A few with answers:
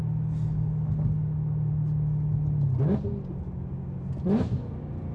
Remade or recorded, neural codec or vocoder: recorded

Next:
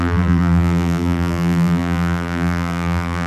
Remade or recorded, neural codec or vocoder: remade, vocoder, BigVGAN v2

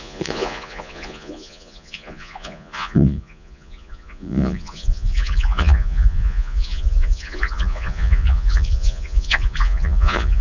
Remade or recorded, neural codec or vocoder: remade, vocoder, Vocos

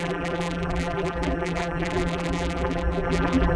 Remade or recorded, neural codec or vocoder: remade, vocoder, BigVGAN v2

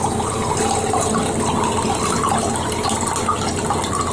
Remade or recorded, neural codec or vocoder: recorded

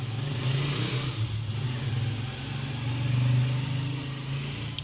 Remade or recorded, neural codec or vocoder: recorded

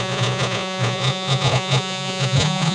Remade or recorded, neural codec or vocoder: remade, vocoder, Vocos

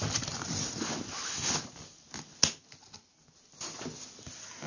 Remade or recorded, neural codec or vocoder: recorded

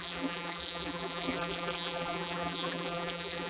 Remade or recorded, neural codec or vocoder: remade, vocoder, BigVGAN v2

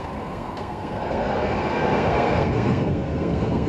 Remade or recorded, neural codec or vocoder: remade, codec, SNAC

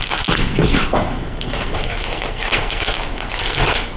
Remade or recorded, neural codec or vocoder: remade, codec, SNAC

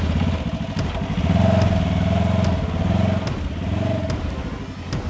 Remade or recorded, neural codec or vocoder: recorded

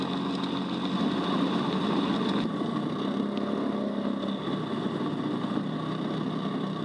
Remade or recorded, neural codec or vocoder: recorded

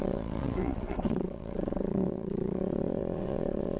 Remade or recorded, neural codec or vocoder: remade, vocoder, WaveNeXt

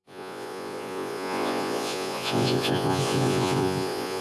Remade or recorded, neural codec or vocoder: remade, vocoder, Vocos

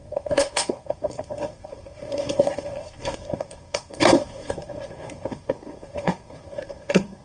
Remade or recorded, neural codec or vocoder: remade, codec, SNAC